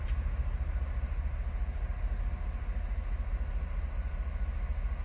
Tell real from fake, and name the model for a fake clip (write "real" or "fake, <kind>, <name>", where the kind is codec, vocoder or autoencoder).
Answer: real